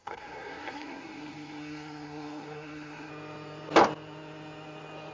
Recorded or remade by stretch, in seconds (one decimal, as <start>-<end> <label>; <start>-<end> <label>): 0.0-3.1 remade; 3.1-5.1 recorded